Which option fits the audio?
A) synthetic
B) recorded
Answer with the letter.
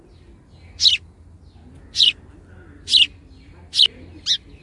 B